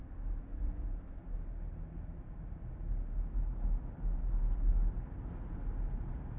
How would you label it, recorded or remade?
recorded